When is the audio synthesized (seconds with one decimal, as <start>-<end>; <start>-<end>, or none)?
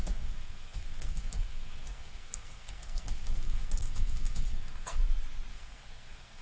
0.0-5.0; 5.5-6.4